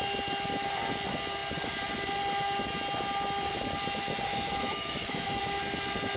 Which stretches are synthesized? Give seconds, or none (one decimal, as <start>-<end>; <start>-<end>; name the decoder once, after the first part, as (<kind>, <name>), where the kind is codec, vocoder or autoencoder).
4.3-5.4 (autoencoder, DAC-VAE)